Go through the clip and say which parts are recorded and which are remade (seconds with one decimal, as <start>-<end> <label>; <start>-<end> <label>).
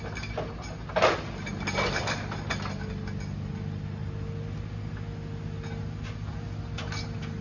0.0-7.4 recorded